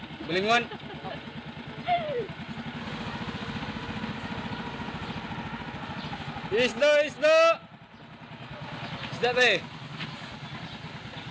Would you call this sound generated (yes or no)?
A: no